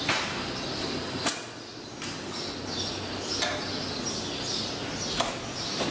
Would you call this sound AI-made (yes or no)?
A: no